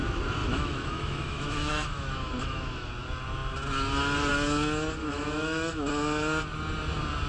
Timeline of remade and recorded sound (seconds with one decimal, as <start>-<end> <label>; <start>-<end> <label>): 0.0-0.4 recorded; 0.4-2.9 remade; 2.9-5.0 recorded; 5.0-5.9 remade; 5.9-7.3 recorded